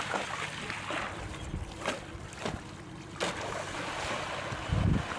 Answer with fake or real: real